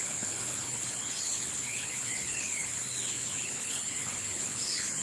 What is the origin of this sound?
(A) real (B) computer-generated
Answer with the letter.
B